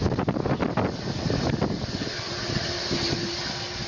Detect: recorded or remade recorded